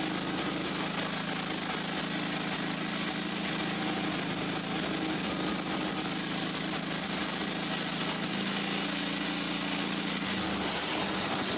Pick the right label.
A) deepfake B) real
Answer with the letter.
B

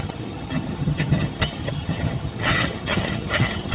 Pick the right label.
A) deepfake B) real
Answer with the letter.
A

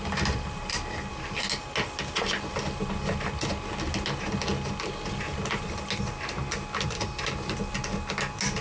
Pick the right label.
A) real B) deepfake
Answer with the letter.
A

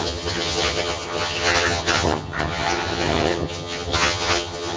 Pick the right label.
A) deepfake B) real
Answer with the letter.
A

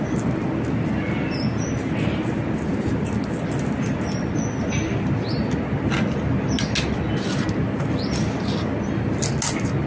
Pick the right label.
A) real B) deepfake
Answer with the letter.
A